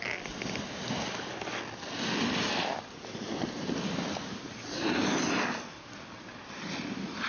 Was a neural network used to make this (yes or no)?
no